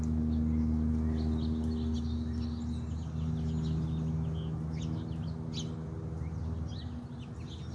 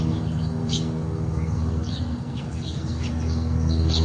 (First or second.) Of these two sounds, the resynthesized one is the second